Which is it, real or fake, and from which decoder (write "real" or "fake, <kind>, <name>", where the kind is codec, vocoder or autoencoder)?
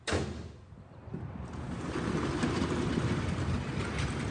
real